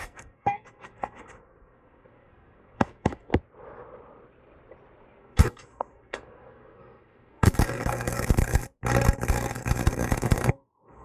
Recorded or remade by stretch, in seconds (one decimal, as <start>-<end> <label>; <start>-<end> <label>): 0.0-3.3 remade; 3.3-5.2 recorded; 5.2-8.6 remade; 8.6-9.3 recorded; 9.3-11.0 remade